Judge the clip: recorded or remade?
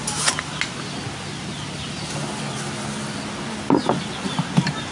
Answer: recorded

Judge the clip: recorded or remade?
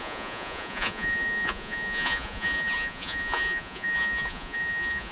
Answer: remade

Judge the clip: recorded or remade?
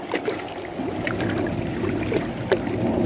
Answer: recorded